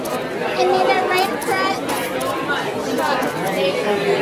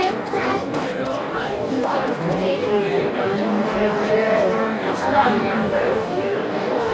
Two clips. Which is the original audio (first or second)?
first